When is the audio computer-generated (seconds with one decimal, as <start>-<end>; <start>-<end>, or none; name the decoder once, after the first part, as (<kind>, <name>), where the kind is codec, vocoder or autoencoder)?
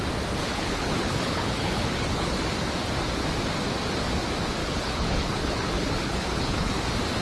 0.4-2.5 (codec, HILCodec); 4.6-6.8